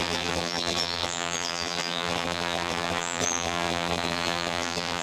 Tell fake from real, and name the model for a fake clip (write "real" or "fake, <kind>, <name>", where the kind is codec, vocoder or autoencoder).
fake, vocoder, BigVGAN v2